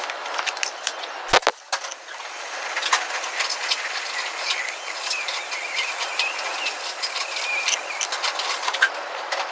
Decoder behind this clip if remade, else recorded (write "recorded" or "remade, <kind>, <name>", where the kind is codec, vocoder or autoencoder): recorded